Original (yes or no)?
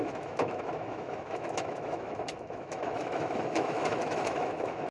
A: no